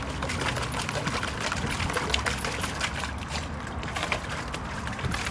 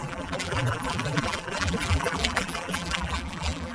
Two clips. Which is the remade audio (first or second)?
second